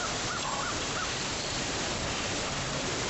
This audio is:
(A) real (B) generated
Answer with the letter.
B